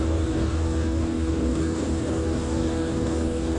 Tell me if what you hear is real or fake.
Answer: fake